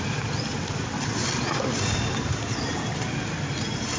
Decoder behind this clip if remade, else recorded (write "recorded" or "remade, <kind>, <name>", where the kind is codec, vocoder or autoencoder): recorded